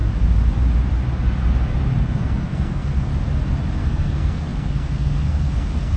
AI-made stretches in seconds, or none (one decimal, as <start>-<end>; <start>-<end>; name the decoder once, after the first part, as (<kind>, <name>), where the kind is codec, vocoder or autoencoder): 2.0-3.1 (codec, SNAC); 3.8-6.0